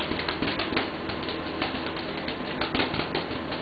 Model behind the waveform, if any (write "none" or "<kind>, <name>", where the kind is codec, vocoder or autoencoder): none